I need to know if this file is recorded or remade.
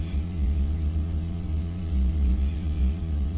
remade